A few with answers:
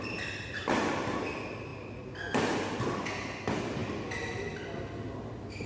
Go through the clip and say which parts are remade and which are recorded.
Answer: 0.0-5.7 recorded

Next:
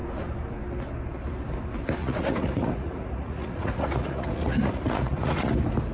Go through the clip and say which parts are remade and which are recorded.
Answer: 0.0-2.0 recorded; 2.0-5.5 remade; 5.5-5.9 recorded

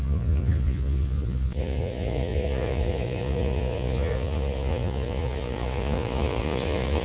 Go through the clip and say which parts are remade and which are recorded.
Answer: 0.0-7.0 remade

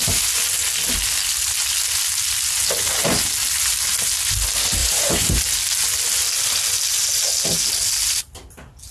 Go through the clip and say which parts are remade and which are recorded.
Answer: 0.0-4.8 recorded; 4.8-5.4 remade; 5.4-8.9 recorded

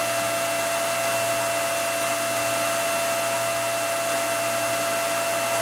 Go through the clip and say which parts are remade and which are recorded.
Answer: 0.0-5.6 recorded

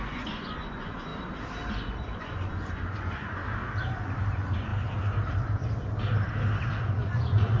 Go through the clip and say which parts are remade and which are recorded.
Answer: 0.0-1.1 remade; 1.1-1.7 recorded; 1.7-3.4 remade; 3.4-4.3 recorded; 4.3-4.7 remade; 4.7-6.9 recorded; 6.9-7.6 remade